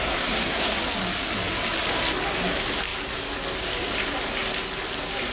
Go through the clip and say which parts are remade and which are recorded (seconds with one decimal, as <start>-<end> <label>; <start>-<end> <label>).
0.0-0.8 remade; 0.8-5.3 recorded